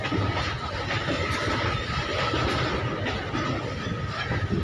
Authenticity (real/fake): real